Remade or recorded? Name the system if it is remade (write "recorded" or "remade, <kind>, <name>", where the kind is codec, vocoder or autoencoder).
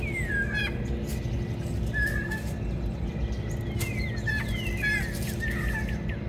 recorded